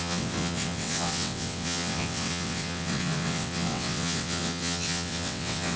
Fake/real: fake